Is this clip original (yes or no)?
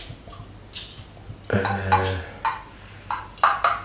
yes